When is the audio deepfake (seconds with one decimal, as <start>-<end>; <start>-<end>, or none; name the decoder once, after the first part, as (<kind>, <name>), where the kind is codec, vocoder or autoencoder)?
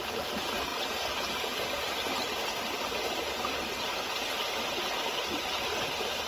none